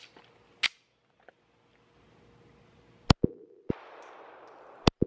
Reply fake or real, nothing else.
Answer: real